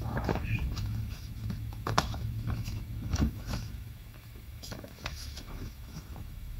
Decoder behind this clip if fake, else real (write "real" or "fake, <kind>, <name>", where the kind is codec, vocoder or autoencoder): fake, autoencoder, DAC-VAE